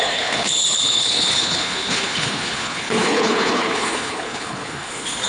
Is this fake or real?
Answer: fake